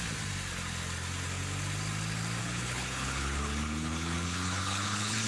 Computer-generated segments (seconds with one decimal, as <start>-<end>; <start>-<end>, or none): 2.4-5.3

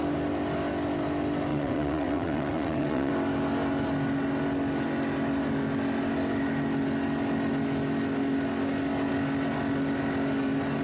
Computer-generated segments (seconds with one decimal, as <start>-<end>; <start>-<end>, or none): 1.5-3.1